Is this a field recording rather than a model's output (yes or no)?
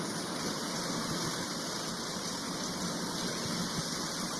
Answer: yes